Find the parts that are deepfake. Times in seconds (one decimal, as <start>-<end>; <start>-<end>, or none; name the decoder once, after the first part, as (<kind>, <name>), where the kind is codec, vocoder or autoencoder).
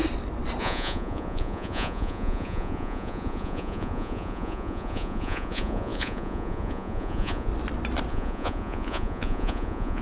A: 0.6-7.5 (vocoder, Vocos); 8.1-10.0